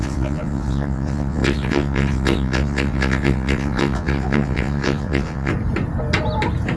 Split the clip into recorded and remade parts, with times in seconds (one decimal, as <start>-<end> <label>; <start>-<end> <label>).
0.0-5.5 remade; 5.5-6.8 recorded